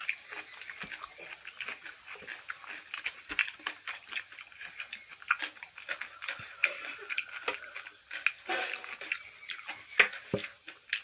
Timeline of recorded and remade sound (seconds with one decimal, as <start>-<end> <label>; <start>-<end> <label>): 0.0-11.0 recorded